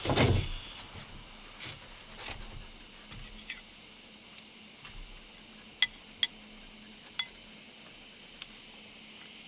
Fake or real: real